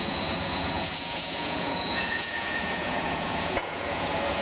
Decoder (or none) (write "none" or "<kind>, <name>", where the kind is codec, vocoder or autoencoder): vocoder, Vocos